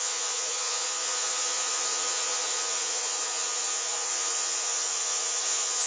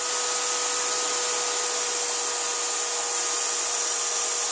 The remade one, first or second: first